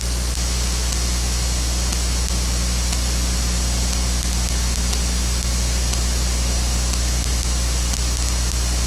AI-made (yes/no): no